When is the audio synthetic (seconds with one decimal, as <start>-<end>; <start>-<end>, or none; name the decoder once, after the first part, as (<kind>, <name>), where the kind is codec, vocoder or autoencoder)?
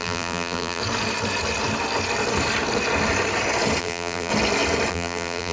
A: 0.0-0.8 (vocoder, BigVGAN v2); 3.8-4.3; 4.9-5.5